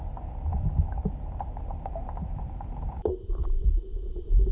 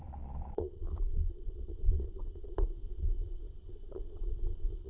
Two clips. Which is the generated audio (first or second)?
second